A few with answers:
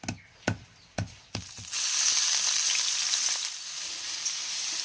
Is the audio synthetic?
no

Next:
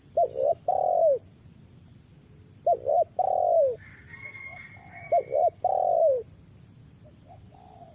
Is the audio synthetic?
no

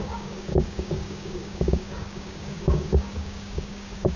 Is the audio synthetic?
yes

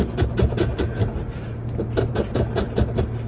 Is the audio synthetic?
no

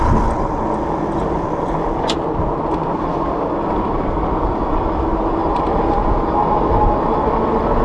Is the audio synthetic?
no